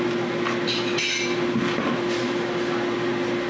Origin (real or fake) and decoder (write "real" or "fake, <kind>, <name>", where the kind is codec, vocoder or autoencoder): real